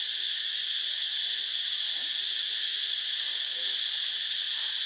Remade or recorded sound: recorded